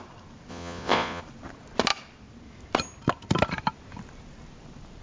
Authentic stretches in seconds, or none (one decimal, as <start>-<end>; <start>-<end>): 0.0-0.5; 1.2-5.0